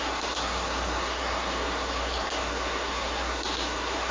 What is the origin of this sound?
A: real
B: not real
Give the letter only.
B